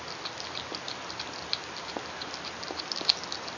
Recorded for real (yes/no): yes